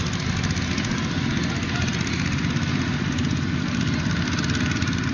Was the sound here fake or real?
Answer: real